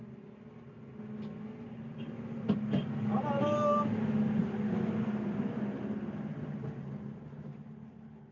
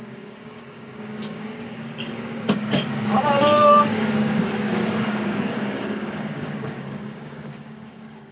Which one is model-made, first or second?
second